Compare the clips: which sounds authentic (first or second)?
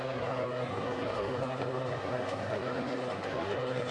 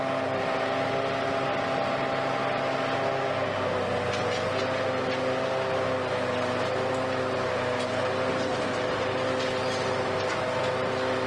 second